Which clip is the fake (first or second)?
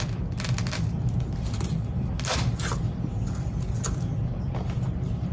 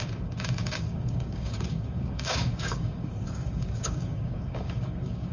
second